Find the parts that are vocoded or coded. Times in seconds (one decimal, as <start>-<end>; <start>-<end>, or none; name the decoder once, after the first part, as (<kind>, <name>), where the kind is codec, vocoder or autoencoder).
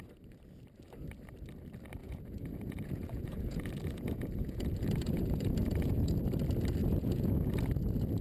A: 2.0-6.2 (vocoder, Vocos); 6.8-7.5